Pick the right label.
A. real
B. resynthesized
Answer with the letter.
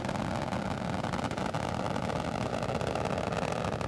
A